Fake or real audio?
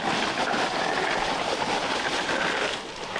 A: real